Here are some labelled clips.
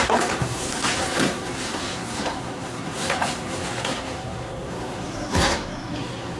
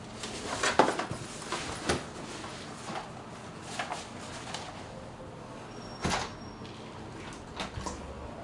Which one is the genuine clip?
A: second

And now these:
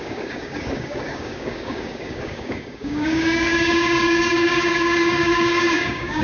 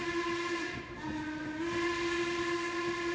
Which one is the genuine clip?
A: second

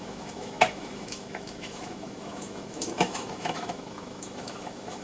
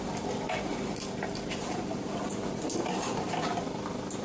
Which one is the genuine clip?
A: second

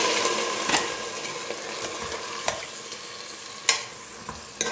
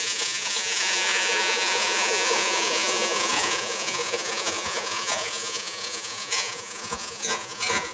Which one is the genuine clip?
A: first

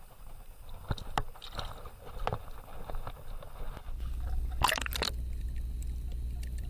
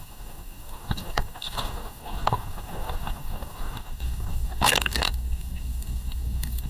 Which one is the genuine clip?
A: first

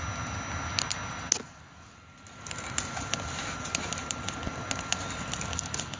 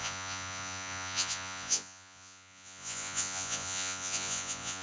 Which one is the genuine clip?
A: first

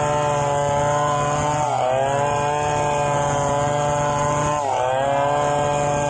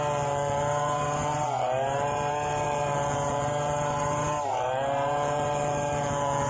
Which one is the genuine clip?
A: first